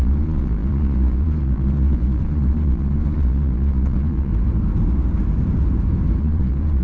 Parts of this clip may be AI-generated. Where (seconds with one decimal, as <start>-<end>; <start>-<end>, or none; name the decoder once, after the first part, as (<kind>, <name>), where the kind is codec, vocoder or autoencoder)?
0.0-4.3 (vocoder, Vocos); 6.2-6.8